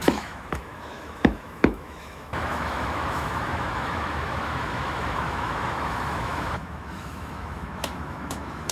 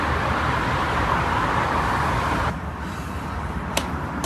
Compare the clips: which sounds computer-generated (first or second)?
first